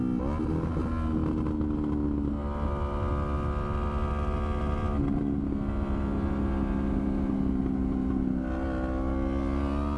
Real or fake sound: real